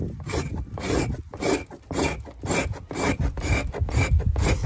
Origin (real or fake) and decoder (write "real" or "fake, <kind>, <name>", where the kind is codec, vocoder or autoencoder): real